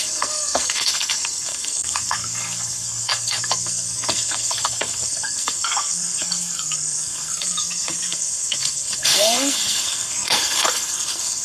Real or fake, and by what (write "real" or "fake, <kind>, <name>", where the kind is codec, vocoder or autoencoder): fake, codec, SNAC